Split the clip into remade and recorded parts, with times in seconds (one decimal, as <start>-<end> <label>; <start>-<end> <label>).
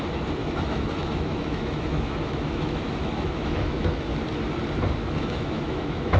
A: 0.0-0.4 recorded; 0.4-4.1 remade; 4.1-5.0 recorded; 5.0-6.2 remade